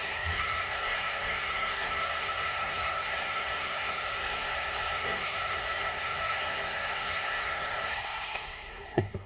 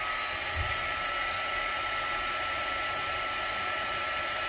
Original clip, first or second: second